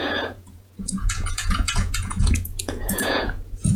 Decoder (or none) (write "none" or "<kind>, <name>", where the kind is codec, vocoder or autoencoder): vocoder, Vocos